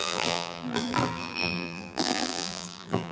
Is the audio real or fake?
fake